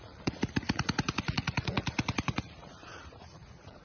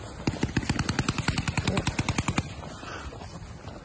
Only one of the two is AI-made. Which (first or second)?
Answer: first